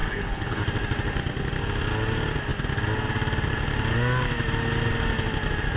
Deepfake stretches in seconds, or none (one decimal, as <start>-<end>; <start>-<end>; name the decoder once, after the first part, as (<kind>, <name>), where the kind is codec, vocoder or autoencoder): 0.0-0.6 (codec, HILCodec)